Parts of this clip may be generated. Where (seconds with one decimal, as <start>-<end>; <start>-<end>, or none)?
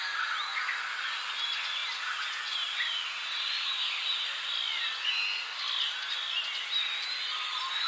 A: 1.8-3.5